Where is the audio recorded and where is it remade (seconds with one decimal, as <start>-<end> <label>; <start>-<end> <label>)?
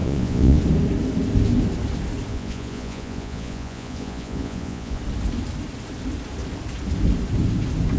0.0-0.6 remade; 0.6-2.3 recorded; 2.3-5.0 remade; 5.0-8.0 recorded